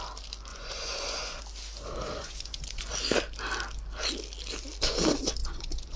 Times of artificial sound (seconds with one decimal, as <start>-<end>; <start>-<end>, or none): 0.5-1.4; 2.2-2.9; 5.4-6.0